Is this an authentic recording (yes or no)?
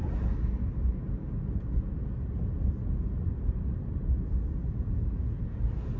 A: yes